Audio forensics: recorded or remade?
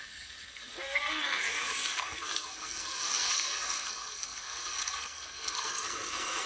remade